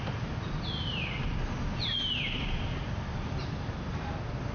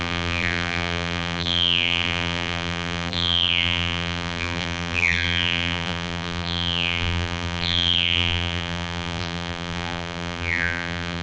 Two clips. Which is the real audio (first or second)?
first